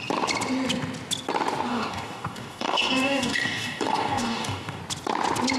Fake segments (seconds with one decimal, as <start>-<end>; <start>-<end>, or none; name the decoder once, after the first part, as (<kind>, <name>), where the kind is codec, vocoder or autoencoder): 1.7-4.8 (codec, DAC)